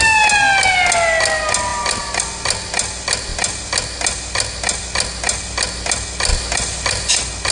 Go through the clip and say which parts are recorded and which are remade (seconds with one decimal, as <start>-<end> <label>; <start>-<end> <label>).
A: 0.0-1.7 recorded; 1.7-2.2 remade; 2.2-6.3 recorded; 6.3-7.1 remade; 7.1-7.5 recorded